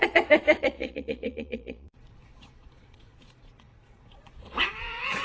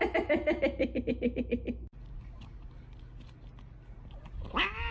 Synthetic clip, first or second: first